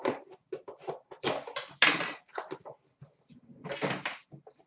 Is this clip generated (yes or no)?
no